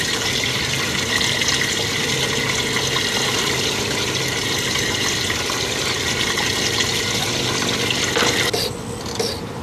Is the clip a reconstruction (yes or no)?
no